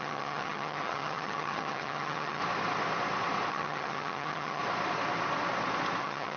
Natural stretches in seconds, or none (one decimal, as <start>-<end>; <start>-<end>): 2.4-3.5; 4.6-6.0